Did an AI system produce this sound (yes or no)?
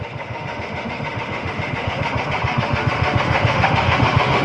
yes